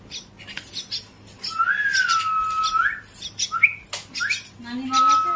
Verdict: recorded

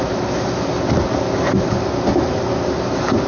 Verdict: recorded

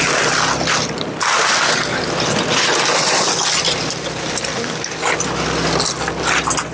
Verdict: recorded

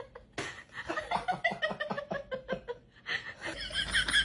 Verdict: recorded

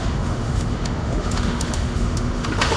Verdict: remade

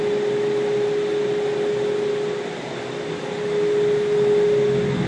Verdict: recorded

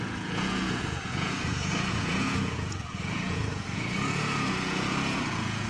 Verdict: remade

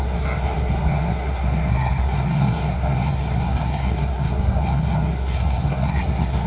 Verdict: remade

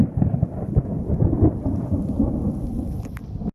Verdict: recorded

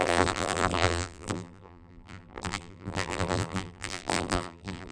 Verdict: remade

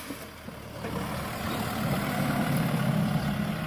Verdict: recorded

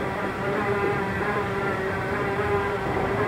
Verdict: remade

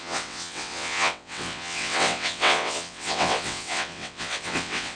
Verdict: remade